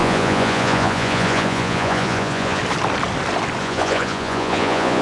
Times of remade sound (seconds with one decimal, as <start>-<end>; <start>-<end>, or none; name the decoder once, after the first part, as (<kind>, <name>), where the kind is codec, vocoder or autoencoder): 0.0-2.6 (vocoder, Vocos); 3.6-5.0